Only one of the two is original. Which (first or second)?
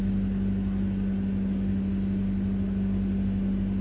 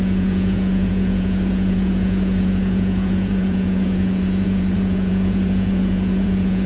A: first